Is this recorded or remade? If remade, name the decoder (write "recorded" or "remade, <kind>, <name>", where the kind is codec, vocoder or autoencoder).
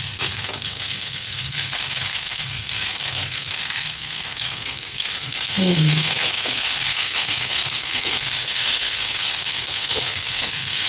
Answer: remade, codec, SNAC